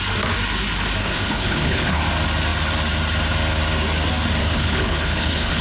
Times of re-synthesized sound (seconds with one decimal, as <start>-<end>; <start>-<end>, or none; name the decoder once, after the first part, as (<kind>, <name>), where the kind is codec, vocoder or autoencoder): 1.0-2.0 (codec, HILCodec); 4.4-5.6